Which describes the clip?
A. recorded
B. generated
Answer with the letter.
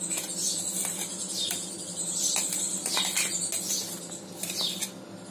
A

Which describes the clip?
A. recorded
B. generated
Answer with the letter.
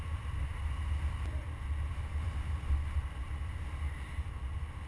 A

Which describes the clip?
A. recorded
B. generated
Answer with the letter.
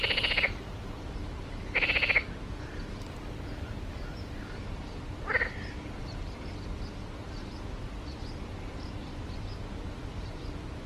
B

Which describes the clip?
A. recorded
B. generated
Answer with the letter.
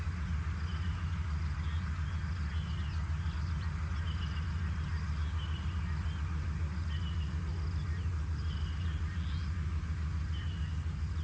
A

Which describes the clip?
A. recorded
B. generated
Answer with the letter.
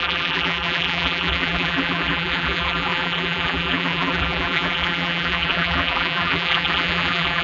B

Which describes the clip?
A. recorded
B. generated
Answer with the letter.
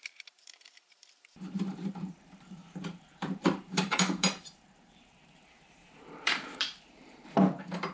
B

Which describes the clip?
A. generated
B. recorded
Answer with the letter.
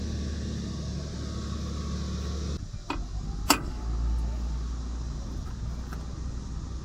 B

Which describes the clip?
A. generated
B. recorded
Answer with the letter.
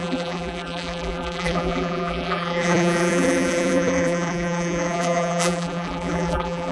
A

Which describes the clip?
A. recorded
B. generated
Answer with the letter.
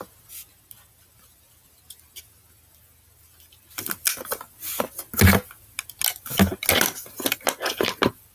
A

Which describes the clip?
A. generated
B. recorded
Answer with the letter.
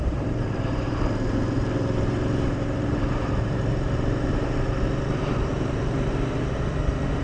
A